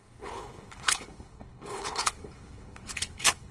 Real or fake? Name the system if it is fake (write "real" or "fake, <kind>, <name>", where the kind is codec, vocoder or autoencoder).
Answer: fake, codec, HILCodec